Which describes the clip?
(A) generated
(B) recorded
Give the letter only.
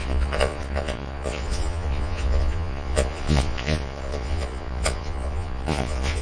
A